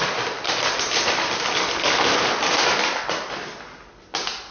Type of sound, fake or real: real